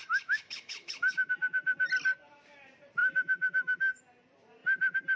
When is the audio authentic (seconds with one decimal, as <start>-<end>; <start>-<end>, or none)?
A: 1.3-3.0; 4.0-5.2